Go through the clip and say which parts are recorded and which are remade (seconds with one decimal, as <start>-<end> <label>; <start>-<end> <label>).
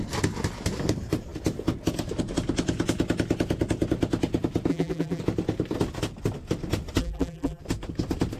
0.0-4.7 recorded; 4.7-5.2 remade; 5.2-7.0 recorded; 7.0-7.6 remade; 7.6-8.4 recorded